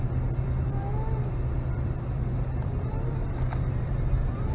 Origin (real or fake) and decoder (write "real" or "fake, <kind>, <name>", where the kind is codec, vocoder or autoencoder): fake, vocoder, BigVGAN v2